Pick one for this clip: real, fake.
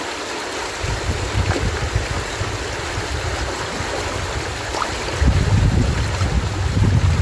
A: real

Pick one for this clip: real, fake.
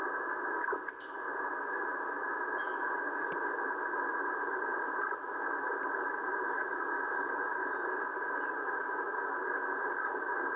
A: real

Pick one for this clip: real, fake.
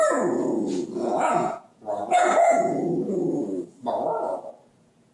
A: fake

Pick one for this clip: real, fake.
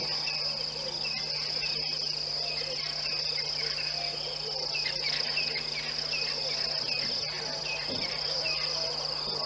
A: real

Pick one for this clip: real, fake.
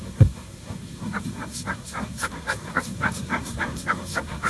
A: fake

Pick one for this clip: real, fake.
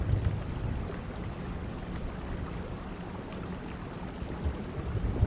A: real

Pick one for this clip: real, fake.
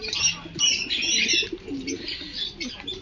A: real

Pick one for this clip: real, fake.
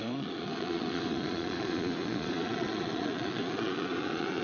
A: fake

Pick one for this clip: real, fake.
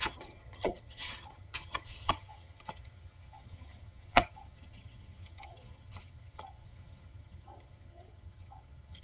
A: fake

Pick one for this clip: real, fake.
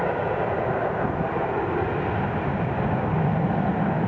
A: real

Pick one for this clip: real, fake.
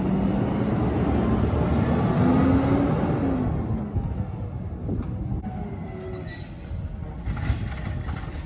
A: real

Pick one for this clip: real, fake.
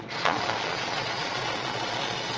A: fake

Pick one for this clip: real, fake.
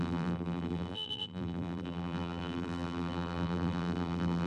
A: fake